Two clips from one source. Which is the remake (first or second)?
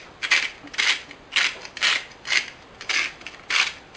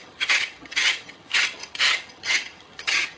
second